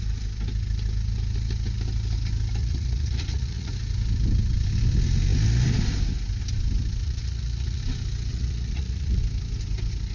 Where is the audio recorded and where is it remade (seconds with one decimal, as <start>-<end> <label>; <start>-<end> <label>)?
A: 0.0-2.6 recorded; 2.6-3.7 remade; 3.7-7.0 recorded; 7.0-7.8 remade; 7.8-8.3 recorded; 8.3-9.2 remade; 9.2-10.1 recorded